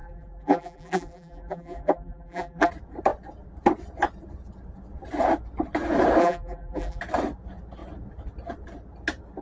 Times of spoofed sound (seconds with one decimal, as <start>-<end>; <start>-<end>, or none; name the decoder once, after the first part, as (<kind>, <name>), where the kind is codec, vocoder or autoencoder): 0.0-2.7 (vocoder, BigVGAN v2); 6.2-7.0